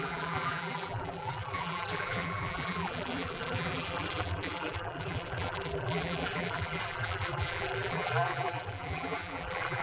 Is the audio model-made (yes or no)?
yes